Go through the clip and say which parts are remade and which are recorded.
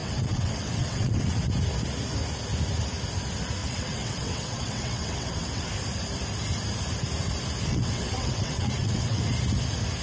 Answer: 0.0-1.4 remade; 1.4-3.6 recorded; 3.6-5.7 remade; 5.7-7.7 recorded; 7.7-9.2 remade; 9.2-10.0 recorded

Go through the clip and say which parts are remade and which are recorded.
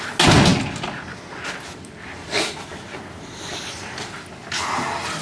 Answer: 0.0-5.2 recorded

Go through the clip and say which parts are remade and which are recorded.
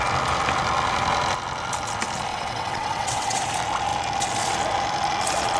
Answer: 0.0-2.3 recorded; 2.3-3.4 remade; 3.4-5.6 recorded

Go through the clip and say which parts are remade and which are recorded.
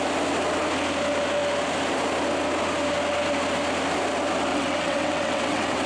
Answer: 0.0-4.5 recorded; 4.5-5.9 remade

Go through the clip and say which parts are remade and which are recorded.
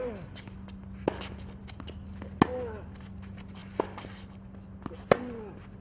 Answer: 0.0-5.8 recorded